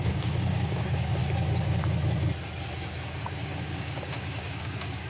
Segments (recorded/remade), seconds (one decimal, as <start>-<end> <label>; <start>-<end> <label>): 0.0-1.2 remade; 1.2-3.2 recorded; 3.2-5.1 remade